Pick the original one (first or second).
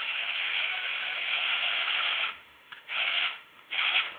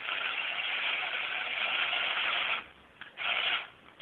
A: second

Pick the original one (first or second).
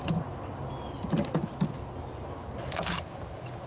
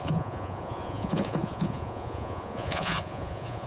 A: first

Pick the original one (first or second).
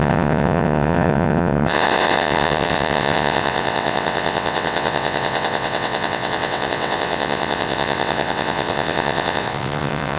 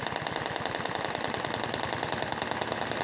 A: second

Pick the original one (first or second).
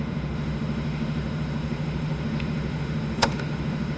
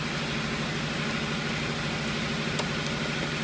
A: second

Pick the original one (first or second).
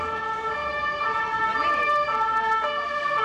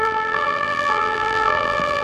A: first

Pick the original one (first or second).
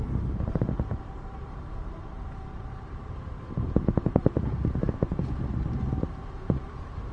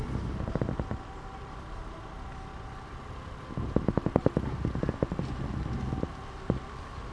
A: second